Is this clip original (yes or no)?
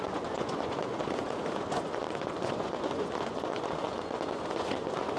no